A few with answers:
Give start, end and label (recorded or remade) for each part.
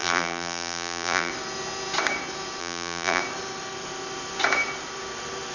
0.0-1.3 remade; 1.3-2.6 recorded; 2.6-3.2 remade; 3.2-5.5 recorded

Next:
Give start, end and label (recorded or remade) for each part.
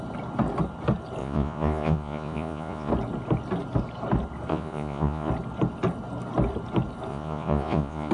0.0-1.2 recorded; 1.2-2.9 remade; 2.9-4.5 recorded; 4.5-5.3 remade; 5.3-7.1 recorded; 7.1-8.1 remade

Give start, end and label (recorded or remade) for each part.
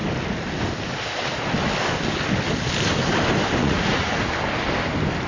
0.0-3.6 recorded; 3.6-4.2 remade; 4.2-5.3 recorded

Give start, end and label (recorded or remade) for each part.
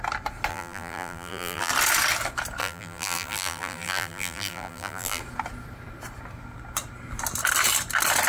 0.0-0.5 recorded; 0.5-1.7 remade; 1.7-2.6 recorded; 2.6-5.2 remade; 5.2-8.3 recorded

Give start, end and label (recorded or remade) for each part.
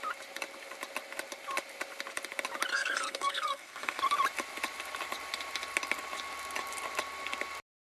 0.0-2.7 recorded; 2.7-4.0 remade; 4.0-7.8 recorded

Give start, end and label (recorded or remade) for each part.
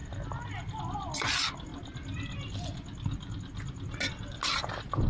0.0-5.1 recorded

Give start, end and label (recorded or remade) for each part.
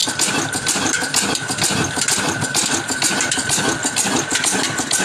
0.0-2.4 remade; 2.4-5.0 recorded